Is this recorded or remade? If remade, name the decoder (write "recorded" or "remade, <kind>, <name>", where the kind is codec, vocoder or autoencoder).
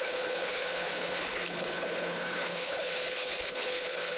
remade, codec, HILCodec